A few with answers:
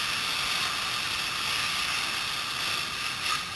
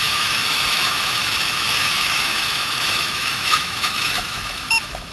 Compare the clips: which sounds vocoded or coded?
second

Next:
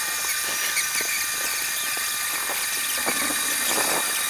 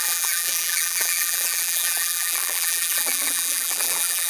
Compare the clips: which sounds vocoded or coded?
second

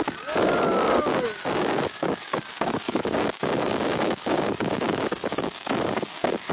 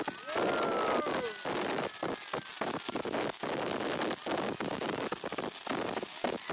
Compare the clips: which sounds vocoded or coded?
first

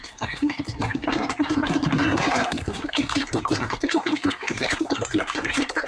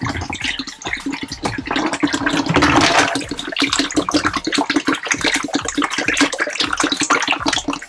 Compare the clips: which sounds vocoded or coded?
first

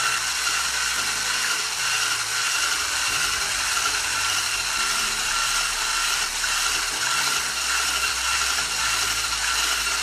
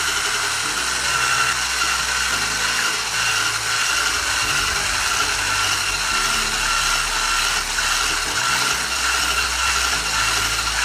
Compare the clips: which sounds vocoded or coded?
first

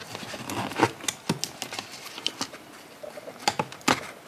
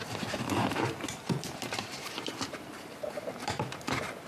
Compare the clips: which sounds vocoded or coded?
second